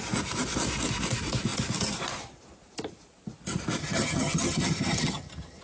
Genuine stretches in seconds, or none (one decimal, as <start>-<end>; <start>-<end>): 0.0-3.8